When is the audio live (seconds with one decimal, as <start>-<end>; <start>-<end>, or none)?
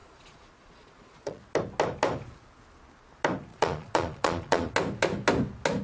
1.4-3.5; 4.7-5.8